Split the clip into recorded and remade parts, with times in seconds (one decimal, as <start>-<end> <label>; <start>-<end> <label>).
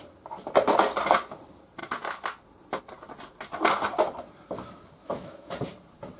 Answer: 0.0-5.0 recorded; 5.0-5.5 remade; 5.5-6.2 recorded